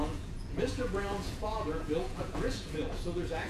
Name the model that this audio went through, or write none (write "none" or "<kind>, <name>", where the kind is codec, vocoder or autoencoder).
vocoder, Vocos